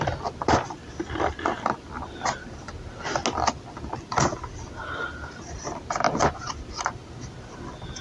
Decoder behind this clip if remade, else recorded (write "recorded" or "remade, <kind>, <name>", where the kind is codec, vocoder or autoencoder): recorded